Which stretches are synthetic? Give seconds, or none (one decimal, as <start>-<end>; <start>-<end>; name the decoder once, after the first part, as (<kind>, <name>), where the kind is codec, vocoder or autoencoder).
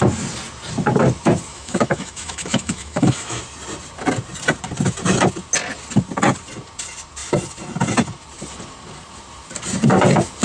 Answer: 1.5-3.4 (autoencoder, DAC-VAE)